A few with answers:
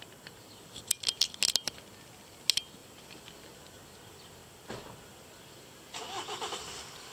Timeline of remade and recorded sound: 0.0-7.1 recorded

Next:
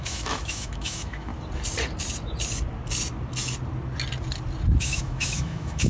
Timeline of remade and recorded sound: 0.0-1.3 remade; 1.3-4.8 recorded; 4.8-5.9 remade

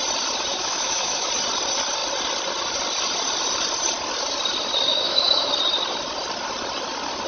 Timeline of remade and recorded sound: 0.0-0.5 recorded; 0.5-1.3 remade; 1.3-4.9 recorded; 4.9-5.5 remade; 5.5-7.3 recorded

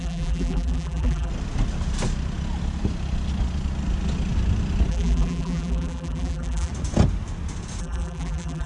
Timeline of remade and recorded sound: 0.0-1.3 remade; 1.3-4.9 recorded; 4.9-6.7 remade; 6.7-7.8 recorded; 7.8-8.7 remade

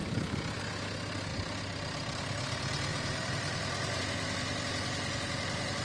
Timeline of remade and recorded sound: 0.0-0.6 remade; 0.6-1.3 recorded; 1.3-2.2 remade; 2.2-2.9 recorded; 2.9-4.0 remade; 4.0-5.8 recorded

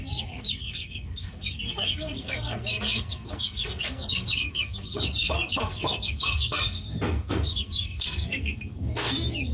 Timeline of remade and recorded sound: 0.0-9.5 remade